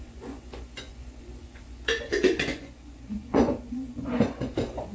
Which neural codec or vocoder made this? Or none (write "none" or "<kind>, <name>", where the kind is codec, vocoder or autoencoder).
vocoder, Vocos